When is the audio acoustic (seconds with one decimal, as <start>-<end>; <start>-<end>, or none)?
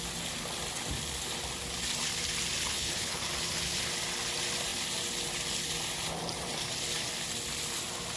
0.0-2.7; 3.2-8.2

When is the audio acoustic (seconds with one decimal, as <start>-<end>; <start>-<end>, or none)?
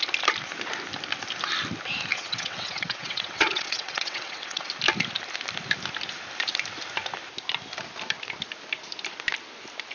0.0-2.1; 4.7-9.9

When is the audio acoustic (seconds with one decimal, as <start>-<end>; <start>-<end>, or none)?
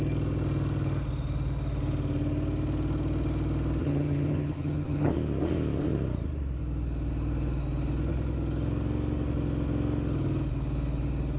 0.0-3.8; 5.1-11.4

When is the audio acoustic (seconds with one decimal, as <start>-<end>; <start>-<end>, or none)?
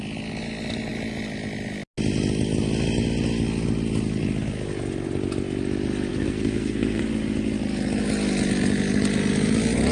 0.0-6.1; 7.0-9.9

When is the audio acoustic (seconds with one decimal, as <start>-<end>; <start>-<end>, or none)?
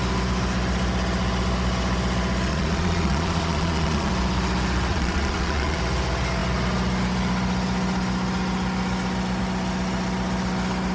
0.0-2.5; 4.1-4.9; 5.8-10.9